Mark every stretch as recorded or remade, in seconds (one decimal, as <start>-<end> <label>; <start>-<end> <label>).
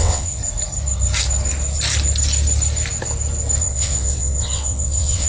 0.0-0.4 remade; 0.4-3.6 recorded; 3.6-5.3 remade